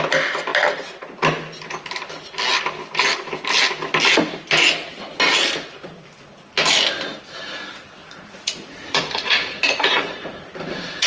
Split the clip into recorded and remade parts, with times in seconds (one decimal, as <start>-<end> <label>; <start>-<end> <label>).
0.0-8.0 recorded; 8.0-11.1 remade